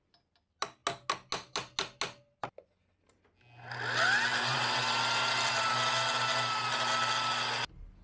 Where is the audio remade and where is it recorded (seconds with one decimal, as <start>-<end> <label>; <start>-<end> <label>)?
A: 0.0-8.0 recorded